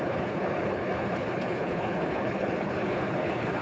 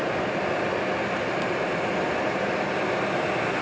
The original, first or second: second